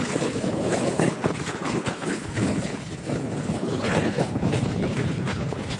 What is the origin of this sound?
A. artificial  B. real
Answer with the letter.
A